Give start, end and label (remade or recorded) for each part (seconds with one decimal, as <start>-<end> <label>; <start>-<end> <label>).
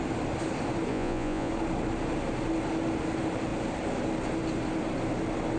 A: 0.0-0.9 recorded; 0.9-1.5 remade; 1.5-5.6 recorded